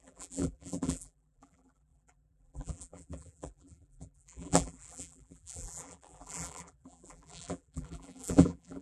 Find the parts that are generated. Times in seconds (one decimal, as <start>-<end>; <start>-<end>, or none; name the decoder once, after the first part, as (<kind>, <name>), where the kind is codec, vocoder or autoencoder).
0.0-8.8 (vocoder, BigVGAN v2)